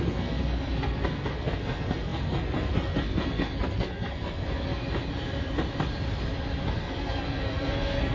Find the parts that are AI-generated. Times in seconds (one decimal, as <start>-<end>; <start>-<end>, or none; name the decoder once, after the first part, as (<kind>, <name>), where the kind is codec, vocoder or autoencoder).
0.0-4.8 (codec, SNAC); 6.7-8.1